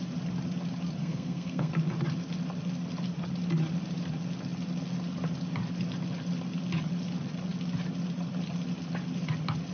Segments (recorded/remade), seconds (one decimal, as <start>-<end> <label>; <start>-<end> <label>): 0.0-1.0 recorded; 1.0-1.7 remade; 1.7-9.7 recorded